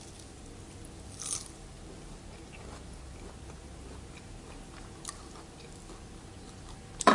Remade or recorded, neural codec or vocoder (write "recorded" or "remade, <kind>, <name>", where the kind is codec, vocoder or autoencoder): recorded